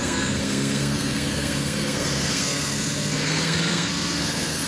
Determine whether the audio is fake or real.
fake